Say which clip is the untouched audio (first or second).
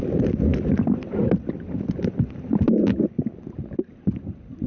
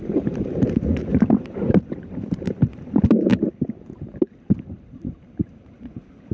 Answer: first